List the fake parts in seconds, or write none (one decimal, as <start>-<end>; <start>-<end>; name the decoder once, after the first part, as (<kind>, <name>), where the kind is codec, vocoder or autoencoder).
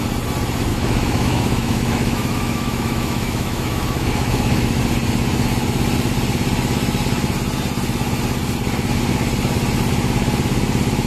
0.7-4.8 (autoencoder, DAC-VAE)